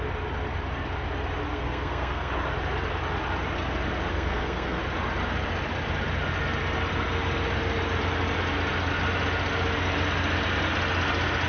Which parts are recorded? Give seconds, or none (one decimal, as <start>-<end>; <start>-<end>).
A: 0.0-1.5; 2.3-4.1; 4.8-11.5

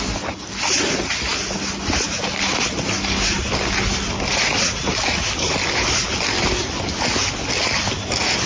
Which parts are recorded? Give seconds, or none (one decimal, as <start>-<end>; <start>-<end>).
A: 0.0-8.5

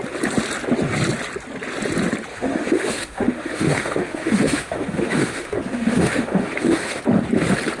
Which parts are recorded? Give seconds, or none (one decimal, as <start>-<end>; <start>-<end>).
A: 0.0-2.3; 7.0-7.8

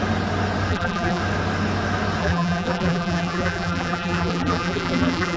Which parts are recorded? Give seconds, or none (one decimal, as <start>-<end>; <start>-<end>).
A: 0.0-0.7; 1.2-2.2

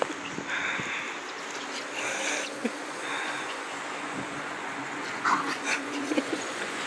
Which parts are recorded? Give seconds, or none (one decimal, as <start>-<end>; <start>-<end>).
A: 0.0-2.6

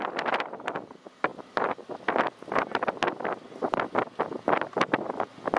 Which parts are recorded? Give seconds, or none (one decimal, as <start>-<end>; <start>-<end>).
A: 0.0-5.6